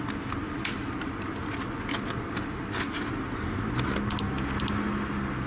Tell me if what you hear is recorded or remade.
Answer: recorded